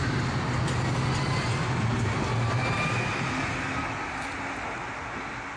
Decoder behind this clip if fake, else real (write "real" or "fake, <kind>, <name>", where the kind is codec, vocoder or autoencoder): real